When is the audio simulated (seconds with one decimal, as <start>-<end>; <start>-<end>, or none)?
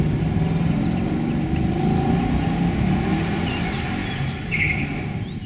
3.1-4.4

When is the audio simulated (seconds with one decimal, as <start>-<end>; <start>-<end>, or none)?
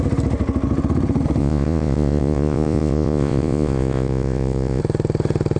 1.4-4.8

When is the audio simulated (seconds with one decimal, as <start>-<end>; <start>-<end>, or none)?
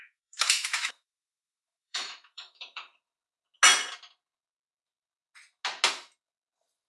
0.0-2.9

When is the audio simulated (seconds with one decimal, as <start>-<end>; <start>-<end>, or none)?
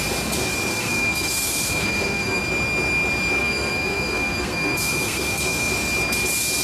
0.7-2.4; 3.4-5.7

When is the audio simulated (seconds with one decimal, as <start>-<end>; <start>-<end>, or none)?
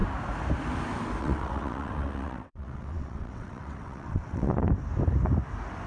1.2-4.7